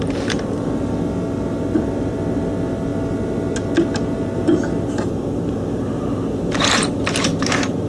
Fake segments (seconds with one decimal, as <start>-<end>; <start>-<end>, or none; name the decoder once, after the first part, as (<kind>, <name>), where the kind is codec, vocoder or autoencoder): none